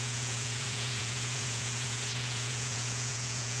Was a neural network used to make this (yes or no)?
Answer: yes